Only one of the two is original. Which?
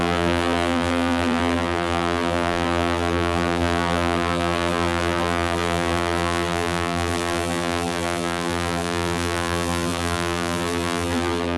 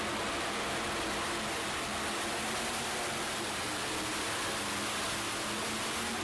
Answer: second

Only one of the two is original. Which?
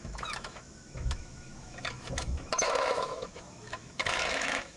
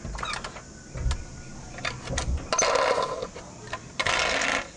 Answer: second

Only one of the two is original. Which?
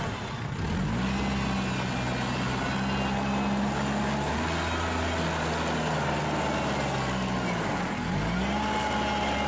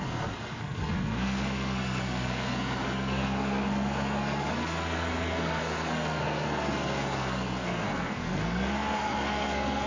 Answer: first